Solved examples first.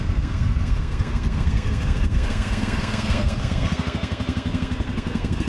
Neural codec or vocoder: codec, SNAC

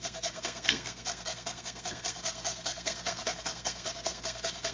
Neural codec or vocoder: codec, SNAC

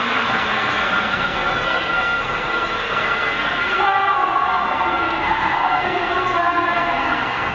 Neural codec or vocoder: codec, SNAC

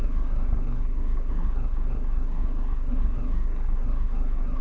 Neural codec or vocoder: codec, SNAC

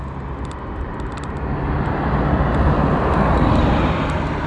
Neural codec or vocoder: none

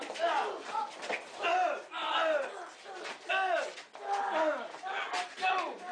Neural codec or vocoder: none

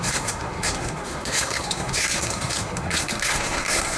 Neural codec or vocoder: codec, SNAC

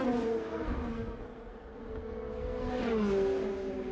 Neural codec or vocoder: codec, SNAC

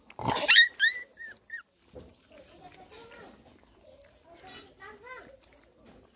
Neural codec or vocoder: none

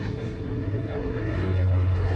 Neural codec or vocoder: codec, SNAC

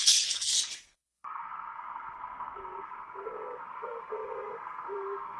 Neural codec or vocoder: codec, SNAC